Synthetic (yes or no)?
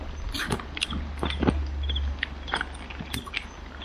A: no